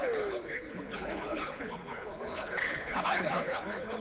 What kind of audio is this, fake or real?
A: fake